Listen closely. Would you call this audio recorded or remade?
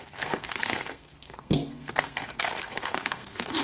remade